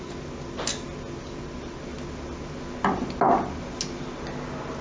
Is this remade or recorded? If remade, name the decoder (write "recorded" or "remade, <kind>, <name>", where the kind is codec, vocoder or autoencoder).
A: recorded